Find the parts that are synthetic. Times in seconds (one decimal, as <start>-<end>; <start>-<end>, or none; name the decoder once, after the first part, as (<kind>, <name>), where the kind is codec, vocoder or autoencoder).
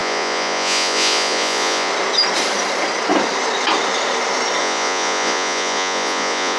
0.0-1.9 (vocoder, Vocos); 4.6-6.6